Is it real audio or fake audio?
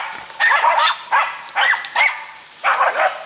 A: real